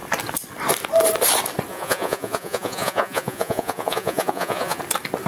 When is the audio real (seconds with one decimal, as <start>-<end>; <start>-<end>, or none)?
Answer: 0.0-1.7; 4.8-5.3